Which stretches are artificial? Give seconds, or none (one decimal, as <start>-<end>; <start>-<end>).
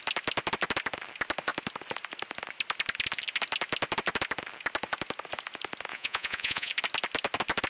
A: 5.9-6.7